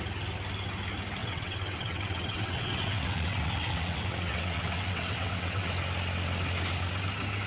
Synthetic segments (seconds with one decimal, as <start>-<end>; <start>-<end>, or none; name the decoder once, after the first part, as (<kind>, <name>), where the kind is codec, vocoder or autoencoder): 1.2-5.7 (vocoder, WaveNeXt)